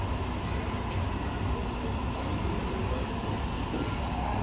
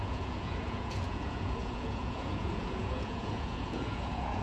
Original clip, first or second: first